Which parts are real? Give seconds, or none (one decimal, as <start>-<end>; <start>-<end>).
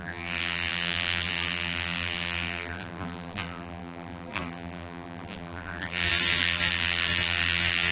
none